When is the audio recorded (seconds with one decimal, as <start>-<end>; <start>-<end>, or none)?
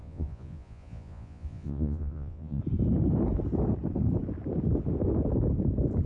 2.6-6.1